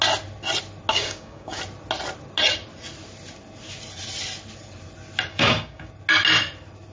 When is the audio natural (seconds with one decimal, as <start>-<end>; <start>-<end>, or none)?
0.0-0.9; 1.6-5.3; 5.9-6.9